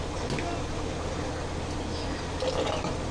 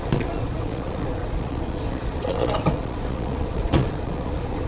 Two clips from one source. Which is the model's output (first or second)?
second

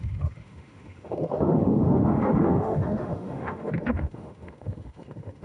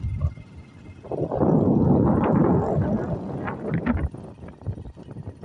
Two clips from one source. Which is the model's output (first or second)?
first